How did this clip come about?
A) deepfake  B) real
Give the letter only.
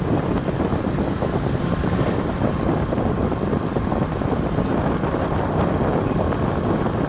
A